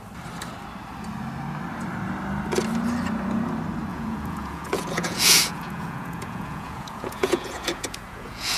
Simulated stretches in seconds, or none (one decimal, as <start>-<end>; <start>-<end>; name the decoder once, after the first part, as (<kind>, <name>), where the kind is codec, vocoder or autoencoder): 3.9-8.6 (vocoder, Vocos)